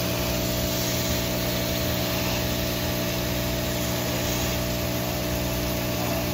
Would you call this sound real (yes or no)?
yes